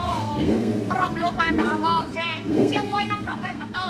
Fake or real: fake